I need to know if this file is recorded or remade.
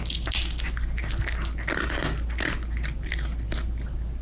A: recorded